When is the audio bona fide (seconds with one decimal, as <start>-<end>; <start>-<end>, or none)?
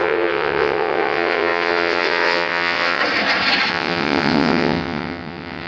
3.0-3.7